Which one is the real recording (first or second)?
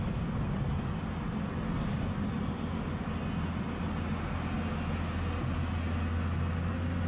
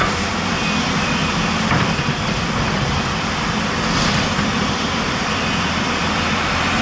first